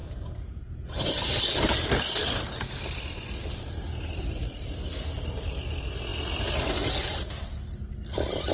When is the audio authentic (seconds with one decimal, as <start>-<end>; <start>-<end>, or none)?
0.0-8.5